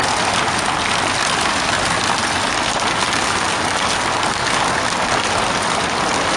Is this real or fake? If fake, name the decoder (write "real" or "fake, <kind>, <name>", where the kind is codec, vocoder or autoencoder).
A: real